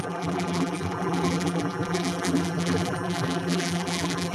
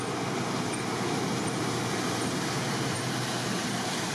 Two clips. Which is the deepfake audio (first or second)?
first